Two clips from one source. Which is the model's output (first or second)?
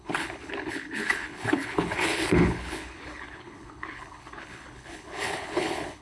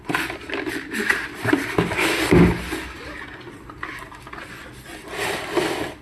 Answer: first